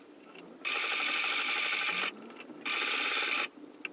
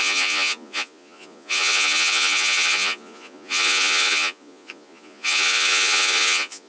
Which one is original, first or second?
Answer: first